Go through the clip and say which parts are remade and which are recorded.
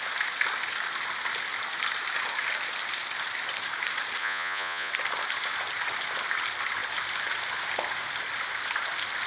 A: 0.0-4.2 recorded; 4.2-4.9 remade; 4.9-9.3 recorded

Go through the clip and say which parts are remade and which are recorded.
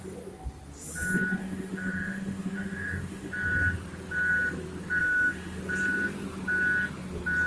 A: 0.0-1.4 recorded; 1.4-3.3 remade; 3.3-5.0 recorded; 5.0-5.6 remade; 5.6-7.5 recorded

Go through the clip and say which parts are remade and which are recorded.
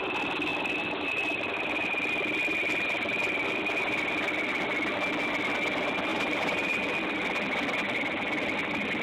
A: 0.0-6.1 recorded; 6.1-6.8 remade; 6.8-9.0 recorded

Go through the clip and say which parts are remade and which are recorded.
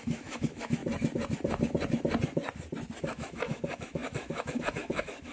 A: 0.0-0.8 remade; 0.8-3.0 recorded; 3.0-5.3 remade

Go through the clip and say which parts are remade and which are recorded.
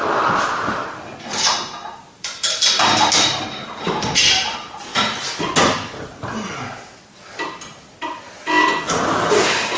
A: 0.0-0.8 remade; 0.8-1.3 recorded; 1.3-4.9 remade; 4.9-9.8 recorded